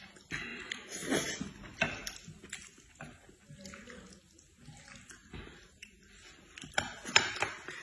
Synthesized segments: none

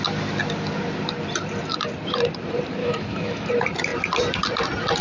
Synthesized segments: 2.8-3.5 (autoencoder, DAC-VAE)

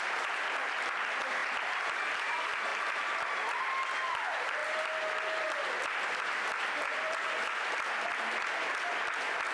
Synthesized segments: 2.7-3.4 (vocoder, BigVGAN v2)